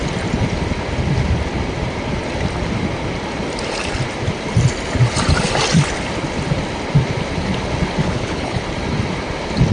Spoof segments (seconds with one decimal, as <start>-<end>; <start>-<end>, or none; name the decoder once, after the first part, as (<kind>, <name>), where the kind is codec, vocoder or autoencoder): 8.0-8.6 (codec, HILCodec)